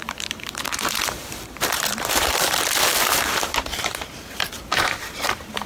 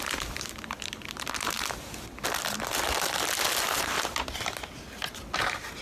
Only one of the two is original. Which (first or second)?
second